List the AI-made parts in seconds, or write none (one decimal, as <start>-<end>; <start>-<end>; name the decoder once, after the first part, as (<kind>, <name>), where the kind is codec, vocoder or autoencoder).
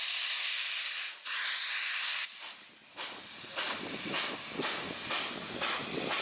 none